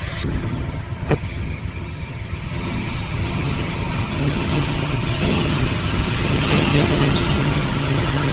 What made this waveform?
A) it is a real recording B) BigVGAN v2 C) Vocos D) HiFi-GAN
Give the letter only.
D